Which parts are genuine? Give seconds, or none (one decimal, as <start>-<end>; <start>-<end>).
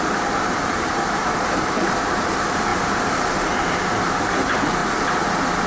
4.8-5.7